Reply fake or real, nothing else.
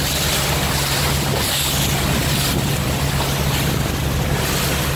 real